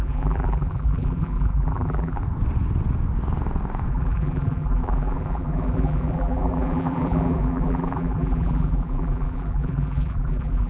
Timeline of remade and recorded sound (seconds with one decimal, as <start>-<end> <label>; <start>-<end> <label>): 0.0-2.2 remade; 2.2-3.9 recorded; 3.9-10.7 remade